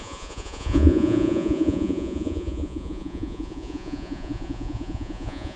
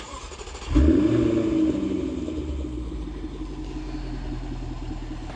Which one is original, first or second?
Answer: second